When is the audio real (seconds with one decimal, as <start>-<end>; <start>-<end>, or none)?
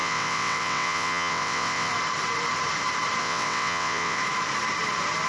1.9-3.2; 4.2-5.3